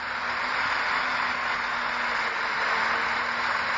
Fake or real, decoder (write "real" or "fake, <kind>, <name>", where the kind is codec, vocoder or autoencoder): real